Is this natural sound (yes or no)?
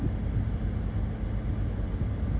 yes